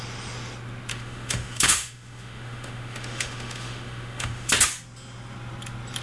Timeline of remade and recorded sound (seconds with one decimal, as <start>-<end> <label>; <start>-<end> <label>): 0.0-0.9 recorded; 0.9-4.5 remade; 4.5-6.0 recorded